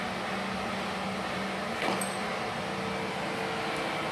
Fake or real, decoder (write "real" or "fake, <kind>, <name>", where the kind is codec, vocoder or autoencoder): real